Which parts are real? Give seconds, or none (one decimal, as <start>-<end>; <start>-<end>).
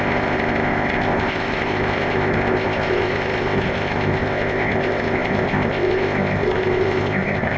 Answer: none